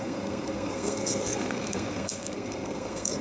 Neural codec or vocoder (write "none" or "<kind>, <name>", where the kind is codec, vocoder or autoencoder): codec, SNAC